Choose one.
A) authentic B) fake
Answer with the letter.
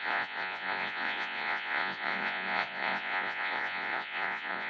B